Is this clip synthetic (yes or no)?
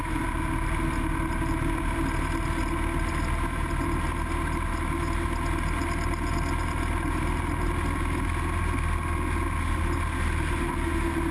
no